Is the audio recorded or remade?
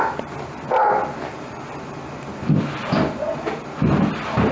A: remade